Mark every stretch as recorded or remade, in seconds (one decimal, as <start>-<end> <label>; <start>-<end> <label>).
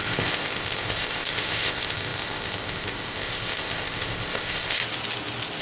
0.0-4.8 remade; 4.8-5.6 recorded